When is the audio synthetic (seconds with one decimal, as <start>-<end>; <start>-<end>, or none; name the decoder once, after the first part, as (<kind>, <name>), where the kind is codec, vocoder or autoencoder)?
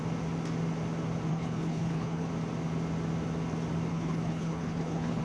1.3-2.3 (codec, HILCodec); 3.9-5.2